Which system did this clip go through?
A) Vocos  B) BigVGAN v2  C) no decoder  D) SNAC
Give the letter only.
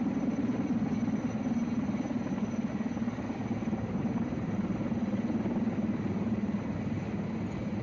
C